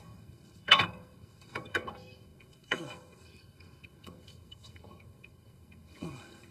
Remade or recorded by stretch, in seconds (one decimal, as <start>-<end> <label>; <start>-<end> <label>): 0.0-6.5 remade